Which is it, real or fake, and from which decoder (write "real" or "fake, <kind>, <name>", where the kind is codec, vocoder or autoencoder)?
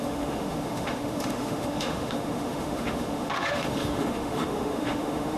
fake, autoencoder, DAC-VAE